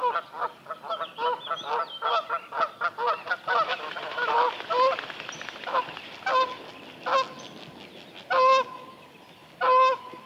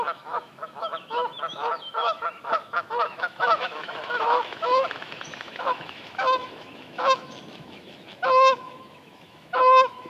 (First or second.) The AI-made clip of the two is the second